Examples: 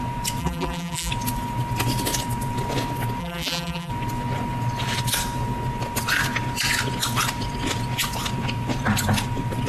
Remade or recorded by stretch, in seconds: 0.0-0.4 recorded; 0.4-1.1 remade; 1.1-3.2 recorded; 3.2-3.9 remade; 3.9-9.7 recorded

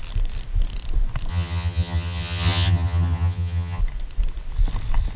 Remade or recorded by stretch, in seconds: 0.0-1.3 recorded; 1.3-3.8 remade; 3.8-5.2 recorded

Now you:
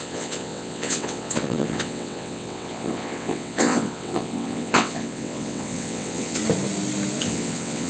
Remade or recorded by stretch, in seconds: 0.0-6.4 remade; 6.4-7.2 recorded; 7.2-7.9 remade